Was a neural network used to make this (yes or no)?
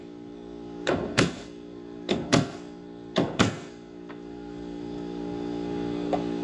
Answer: yes